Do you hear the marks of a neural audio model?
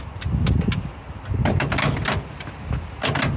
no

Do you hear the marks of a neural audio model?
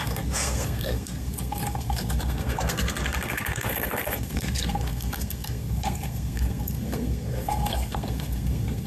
yes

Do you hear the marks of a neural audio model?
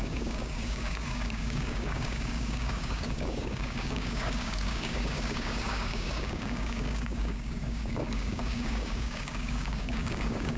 yes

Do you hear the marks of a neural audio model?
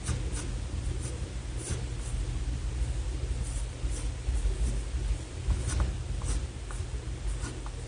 no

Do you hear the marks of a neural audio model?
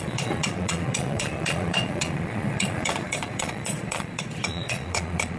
yes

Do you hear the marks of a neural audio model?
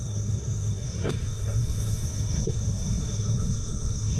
yes